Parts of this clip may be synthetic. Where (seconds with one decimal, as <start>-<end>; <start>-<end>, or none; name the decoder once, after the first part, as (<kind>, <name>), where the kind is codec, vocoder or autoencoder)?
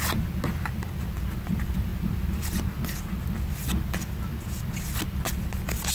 none